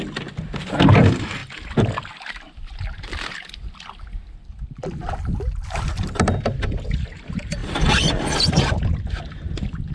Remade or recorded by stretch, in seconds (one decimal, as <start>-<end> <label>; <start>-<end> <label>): 0.0-9.9 recorded